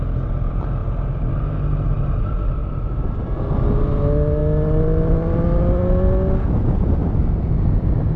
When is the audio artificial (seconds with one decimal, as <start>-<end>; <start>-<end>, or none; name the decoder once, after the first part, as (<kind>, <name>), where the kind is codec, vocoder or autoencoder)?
2.6-3.2 (vocoder, BigVGAN v2)